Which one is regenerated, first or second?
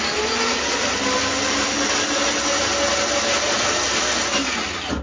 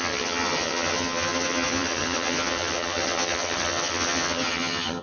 second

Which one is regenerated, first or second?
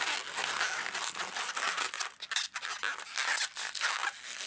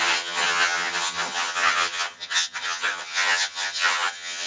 second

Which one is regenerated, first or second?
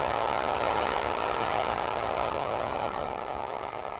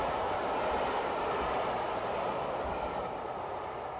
first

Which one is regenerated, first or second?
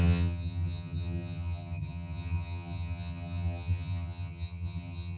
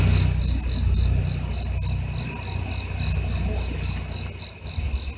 first